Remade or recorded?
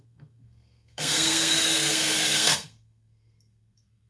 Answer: remade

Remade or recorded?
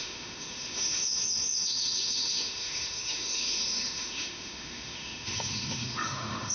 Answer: remade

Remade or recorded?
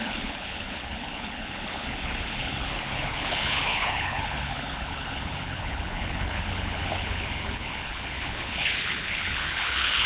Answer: remade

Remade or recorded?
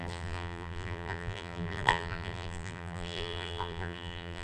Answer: remade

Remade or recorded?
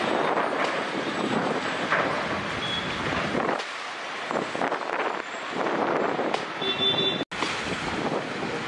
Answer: recorded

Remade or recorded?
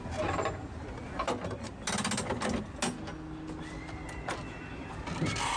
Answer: recorded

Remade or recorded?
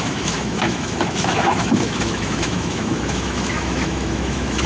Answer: remade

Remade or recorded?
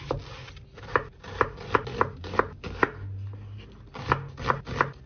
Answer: recorded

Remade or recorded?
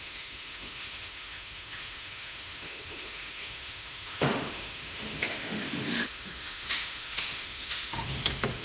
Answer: remade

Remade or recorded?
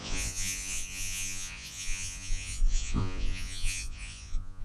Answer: remade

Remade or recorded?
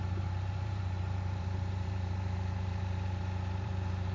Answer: remade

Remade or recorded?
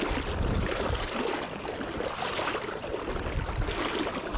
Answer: recorded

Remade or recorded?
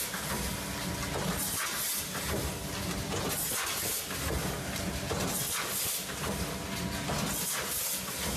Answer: recorded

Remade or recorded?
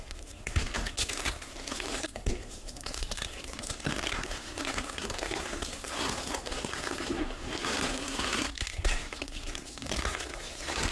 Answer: remade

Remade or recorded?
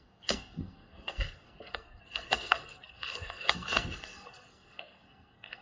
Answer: remade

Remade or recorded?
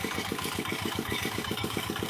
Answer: remade